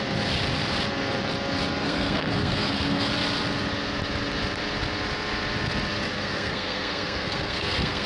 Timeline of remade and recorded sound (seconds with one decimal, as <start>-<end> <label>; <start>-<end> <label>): 0.0-1.8 recorded; 1.8-3.1 remade; 3.1-6.1 recorded; 6.1-8.1 remade